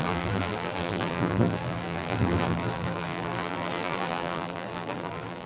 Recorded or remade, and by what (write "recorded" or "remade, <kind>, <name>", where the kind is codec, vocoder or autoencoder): remade, vocoder, BigVGAN v2